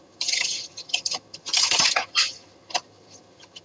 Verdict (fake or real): fake